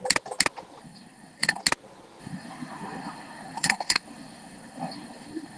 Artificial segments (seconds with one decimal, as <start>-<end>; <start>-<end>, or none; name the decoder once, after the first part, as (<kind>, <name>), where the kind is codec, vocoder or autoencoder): 0.8-1.6 (codec, SNAC); 2.2-5.6